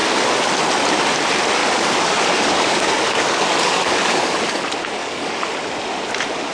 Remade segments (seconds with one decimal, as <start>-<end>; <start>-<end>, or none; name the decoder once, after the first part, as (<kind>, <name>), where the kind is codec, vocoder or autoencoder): 1.6-4.6 (codec, DAC); 5.0-5.5